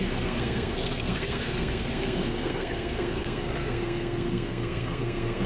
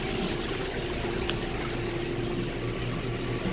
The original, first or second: second